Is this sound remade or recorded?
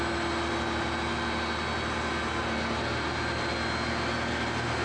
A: recorded